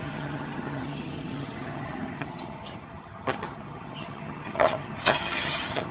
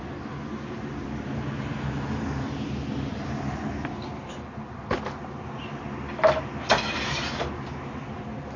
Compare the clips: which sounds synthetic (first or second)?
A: first